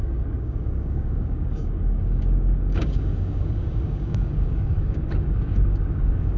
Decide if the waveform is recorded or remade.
remade